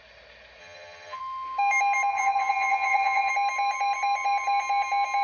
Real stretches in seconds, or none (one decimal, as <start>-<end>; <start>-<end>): 0.0-0.6; 1.2-2.1; 3.3-5.2